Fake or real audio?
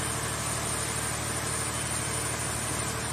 real